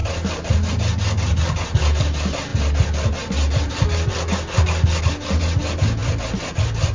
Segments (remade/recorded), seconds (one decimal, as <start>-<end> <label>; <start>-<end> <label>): 0.0-0.7 remade; 0.7-6.9 recorded